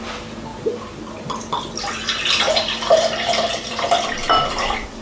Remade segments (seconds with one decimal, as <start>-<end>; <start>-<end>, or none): 0.0-5.0